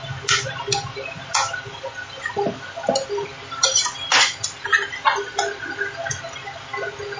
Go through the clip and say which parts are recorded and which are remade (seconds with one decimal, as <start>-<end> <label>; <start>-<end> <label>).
0.0-7.2 recorded